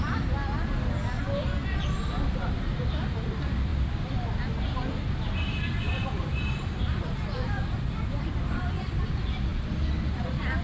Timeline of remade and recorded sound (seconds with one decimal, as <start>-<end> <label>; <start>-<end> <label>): 0.0-1.0 remade; 1.0-1.8 recorded; 1.8-9.5 remade; 9.5-10.1 recorded; 10.1-10.6 remade